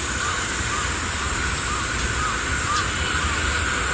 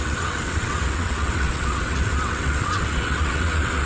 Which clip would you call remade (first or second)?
second